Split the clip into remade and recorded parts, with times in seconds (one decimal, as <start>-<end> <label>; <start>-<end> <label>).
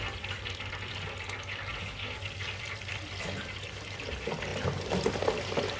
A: 0.0-5.8 recorded